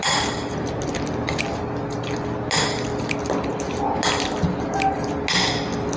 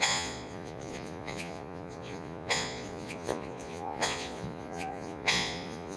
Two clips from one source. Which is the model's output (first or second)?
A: second